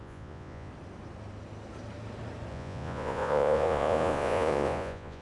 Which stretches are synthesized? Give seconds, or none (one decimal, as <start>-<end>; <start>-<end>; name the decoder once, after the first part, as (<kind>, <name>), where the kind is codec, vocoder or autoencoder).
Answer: 0.0-0.7 (vocoder, Vocos); 2.5-5.2